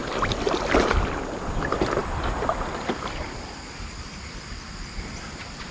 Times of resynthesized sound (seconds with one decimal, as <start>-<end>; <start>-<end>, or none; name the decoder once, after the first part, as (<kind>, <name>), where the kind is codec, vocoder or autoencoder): 1.4-5.7 (vocoder, BigVGAN v2)